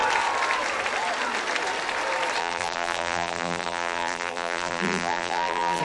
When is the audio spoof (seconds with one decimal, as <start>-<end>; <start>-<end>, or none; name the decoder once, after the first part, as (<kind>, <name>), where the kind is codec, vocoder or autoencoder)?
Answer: 2.4-5.8 (vocoder, BigVGAN v2)

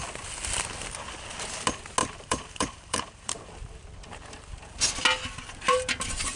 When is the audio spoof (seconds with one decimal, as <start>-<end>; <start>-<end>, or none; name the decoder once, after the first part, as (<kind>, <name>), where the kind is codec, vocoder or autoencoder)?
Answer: 2.0-3.5 (vocoder, BigVGAN v2)

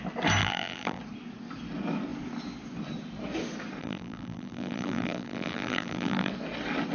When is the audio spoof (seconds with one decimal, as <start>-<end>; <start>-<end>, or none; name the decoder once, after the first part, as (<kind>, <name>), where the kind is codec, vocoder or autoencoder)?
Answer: 0.4-1.0 (vocoder, BigVGAN v2); 3.8-6.3

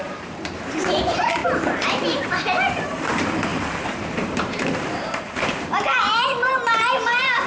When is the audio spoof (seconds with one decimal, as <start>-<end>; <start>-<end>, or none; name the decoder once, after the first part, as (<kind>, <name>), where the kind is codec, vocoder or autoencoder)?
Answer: 0.0-1.4 (vocoder, BigVGAN v2); 2.0-7.5

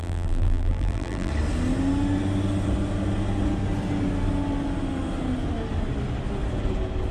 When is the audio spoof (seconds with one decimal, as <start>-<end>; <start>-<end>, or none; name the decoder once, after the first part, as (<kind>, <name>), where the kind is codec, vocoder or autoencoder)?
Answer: 0.0-1.3 (vocoder, BigVGAN v2)